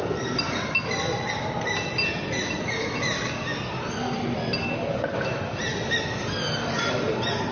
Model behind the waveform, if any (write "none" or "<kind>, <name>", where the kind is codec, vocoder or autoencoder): none